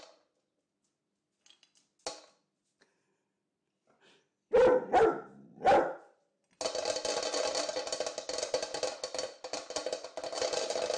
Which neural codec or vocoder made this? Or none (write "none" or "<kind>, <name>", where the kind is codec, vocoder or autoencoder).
none